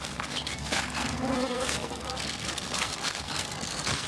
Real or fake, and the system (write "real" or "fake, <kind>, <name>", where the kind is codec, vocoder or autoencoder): fake, codec, SNAC